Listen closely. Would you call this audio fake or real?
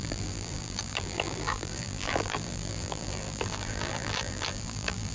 fake